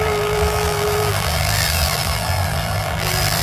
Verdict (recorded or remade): remade